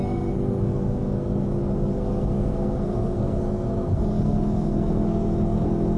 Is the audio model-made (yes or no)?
yes